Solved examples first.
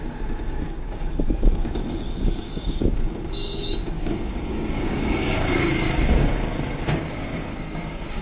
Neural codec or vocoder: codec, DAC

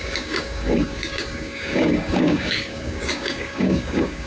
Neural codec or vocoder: codec, DAC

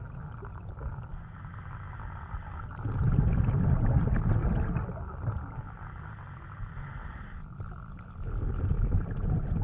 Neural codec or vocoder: none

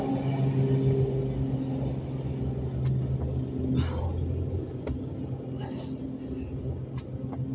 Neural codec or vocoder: none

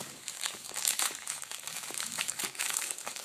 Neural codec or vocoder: codec, DAC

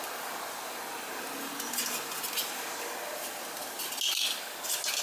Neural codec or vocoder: none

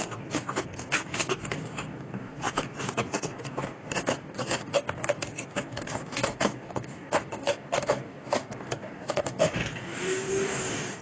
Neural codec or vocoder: codec, DAC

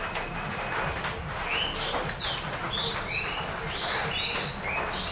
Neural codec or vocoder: none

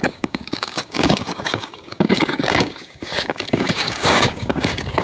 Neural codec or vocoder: codec, DAC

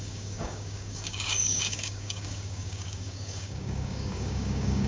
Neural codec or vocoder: codec, DAC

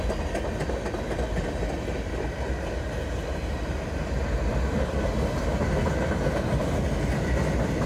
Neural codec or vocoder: none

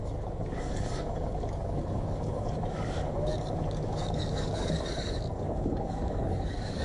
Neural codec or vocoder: codec, DAC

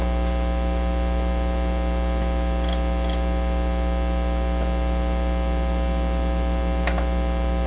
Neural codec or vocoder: none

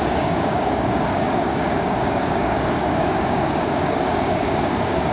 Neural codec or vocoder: codec, DAC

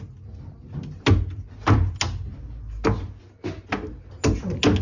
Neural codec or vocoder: none